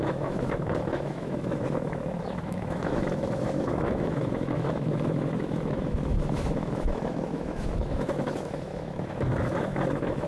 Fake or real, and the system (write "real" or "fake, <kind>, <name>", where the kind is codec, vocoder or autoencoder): fake, autoencoder, DAC-VAE